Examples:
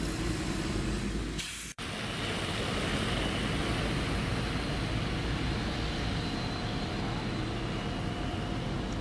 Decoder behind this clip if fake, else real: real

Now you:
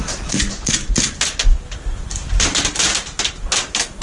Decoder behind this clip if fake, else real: real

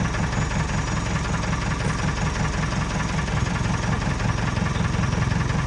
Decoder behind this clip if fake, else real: real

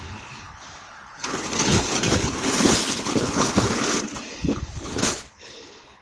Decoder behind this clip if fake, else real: fake, codec, HILCodec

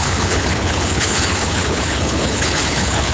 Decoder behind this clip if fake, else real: fake, codec, HILCodec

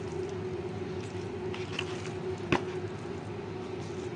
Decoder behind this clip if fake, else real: real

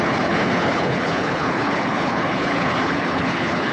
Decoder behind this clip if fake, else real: fake, codec, HILCodec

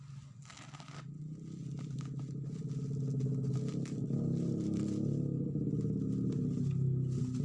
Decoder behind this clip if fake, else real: real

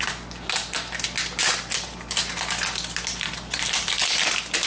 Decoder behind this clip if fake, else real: real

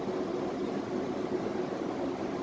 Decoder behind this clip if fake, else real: real